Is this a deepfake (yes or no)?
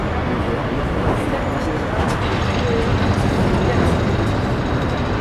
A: no